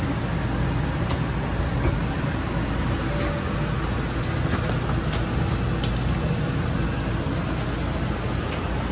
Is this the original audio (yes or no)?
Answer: yes